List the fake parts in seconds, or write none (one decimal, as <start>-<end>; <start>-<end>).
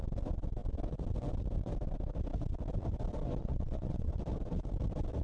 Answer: 3.4-4.1